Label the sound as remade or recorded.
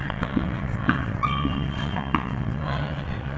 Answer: remade